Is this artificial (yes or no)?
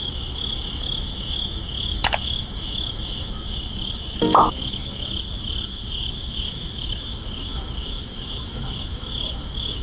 yes